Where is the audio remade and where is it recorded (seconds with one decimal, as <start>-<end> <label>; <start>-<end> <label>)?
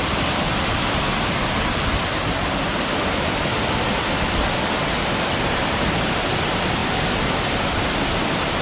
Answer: 0.0-8.6 recorded